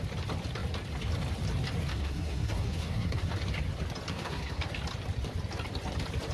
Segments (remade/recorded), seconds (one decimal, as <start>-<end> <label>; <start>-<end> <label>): 0.0-1.9 recorded; 1.9-3.3 remade; 3.3-4.1 recorded; 4.1-4.6 remade; 4.6-6.3 recorded